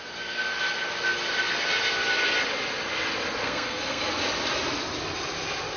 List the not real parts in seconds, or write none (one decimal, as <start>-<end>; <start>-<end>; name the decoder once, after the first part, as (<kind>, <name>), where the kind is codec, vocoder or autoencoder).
3.4-4.1 (codec, SNAC)